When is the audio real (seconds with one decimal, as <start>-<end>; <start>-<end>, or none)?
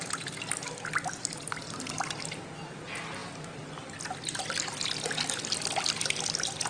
0.0-6.7